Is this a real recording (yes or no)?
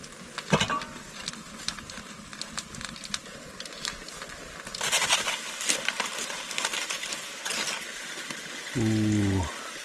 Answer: yes